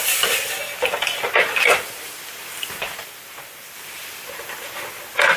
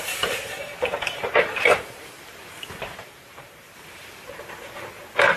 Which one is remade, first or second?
second